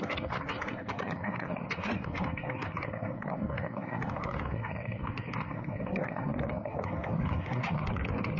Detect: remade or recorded remade